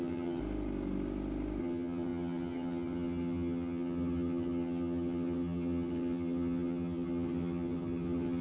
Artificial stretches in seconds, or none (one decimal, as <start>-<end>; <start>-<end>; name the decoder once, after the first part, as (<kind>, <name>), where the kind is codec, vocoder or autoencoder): 0.0-0.4 (vocoder, HiFi-GAN); 1.6-8.4